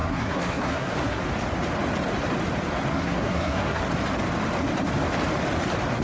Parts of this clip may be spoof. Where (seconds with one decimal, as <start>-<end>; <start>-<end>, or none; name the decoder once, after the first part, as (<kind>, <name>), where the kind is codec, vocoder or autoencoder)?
0.0-1.2 (codec, SNAC); 2.9-3.8